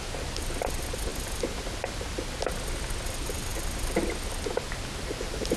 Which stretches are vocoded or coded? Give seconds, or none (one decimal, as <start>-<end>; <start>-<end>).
none